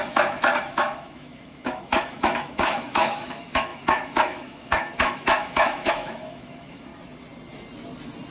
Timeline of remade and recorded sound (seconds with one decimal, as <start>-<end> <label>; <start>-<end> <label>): 0.0-6.9 remade; 6.9-8.3 recorded